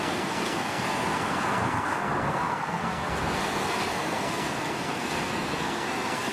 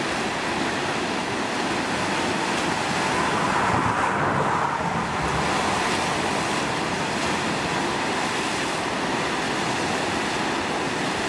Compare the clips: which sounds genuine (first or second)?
second